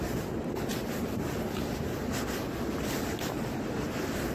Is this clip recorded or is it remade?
recorded